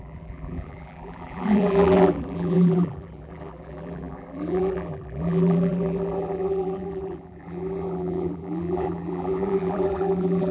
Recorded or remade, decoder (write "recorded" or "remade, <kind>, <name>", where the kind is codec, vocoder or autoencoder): remade, vocoder, BigVGAN v2